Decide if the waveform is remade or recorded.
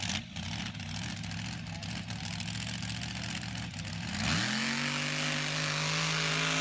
recorded